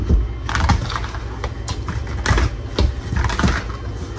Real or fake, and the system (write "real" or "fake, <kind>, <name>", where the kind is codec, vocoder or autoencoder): real